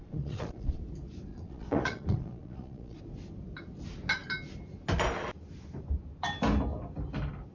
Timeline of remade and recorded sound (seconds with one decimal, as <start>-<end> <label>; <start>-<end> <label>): 0.0-0.8 remade; 0.8-1.3 recorded; 1.3-3.0 remade; 3.0-7.5 recorded